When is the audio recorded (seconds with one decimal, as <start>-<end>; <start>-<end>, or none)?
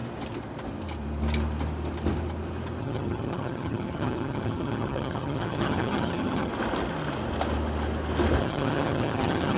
0.0-2.8; 6.5-8.4